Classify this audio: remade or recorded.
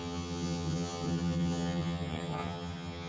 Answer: remade